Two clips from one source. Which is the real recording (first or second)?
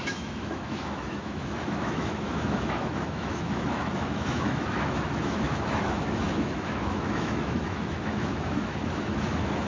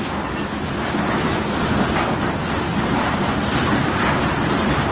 second